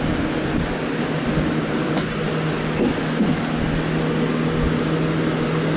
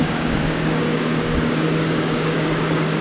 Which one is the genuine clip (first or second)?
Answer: first